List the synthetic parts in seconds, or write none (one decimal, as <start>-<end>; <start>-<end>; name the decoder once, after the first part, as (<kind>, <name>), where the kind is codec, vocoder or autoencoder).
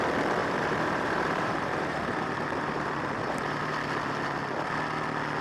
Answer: 0.4-3.6 (vocoder, BigVGAN v2)